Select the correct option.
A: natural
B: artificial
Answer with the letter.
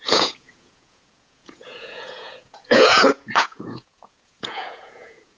B